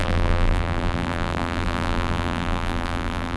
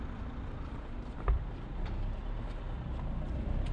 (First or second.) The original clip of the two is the second